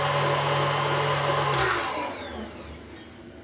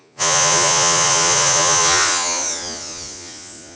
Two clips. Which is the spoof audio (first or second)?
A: second